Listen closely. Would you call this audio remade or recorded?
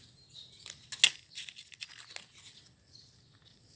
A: recorded